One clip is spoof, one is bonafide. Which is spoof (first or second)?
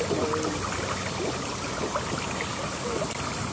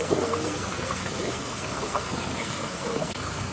second